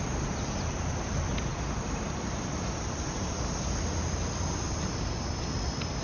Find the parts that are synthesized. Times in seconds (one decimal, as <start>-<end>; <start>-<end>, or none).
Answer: none